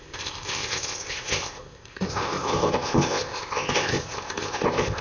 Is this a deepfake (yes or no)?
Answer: yes